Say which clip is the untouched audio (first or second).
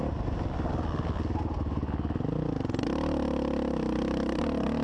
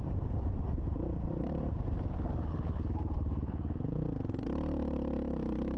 first